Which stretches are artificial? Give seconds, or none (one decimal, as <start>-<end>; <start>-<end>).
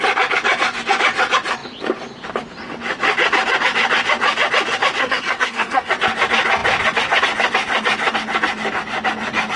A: 5.0-5.9